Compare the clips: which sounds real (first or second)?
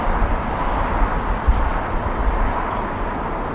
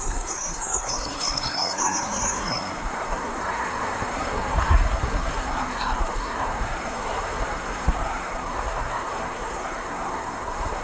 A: first